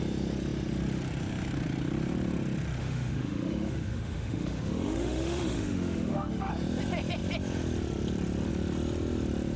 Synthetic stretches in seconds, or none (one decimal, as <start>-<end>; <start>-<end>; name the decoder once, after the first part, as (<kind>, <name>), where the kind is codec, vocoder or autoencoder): 2.8-6.5 (autoencoder, DAC-VAE)